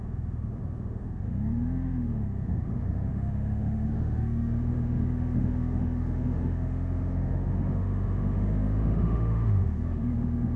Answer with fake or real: fake